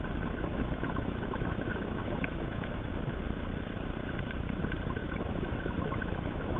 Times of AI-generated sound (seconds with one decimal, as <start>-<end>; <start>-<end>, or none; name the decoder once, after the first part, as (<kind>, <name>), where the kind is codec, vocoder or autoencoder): 0.5-2.9 (autoencoder, DAC-VAE); 5.0-6.6